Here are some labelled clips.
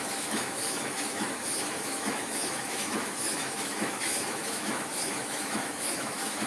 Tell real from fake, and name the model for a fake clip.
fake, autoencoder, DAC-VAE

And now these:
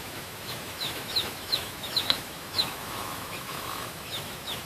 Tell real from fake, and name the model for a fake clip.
fake, autoencoder, DAC-VAE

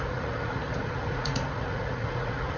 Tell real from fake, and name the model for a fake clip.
fake, vocoder, Vocos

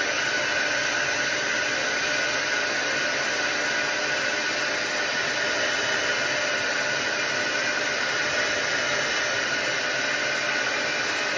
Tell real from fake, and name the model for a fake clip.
real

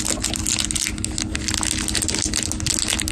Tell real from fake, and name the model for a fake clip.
real